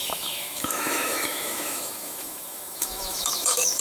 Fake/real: fake